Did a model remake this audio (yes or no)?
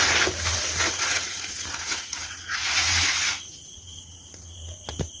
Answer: yes